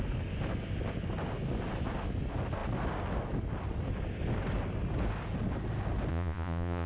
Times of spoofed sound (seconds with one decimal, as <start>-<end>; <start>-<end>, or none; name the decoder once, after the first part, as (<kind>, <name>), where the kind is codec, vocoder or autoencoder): 6.1-6.9 (vocoder, Vocos)